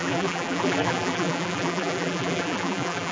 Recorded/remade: remade